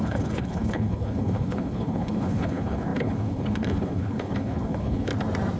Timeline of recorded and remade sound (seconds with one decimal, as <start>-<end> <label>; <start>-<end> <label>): 0.0-5.1 remade; 5.1-5.6 recorded